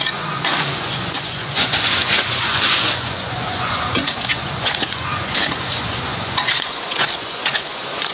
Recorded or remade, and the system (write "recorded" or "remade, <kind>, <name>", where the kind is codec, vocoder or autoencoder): remade, vocoder, Vocos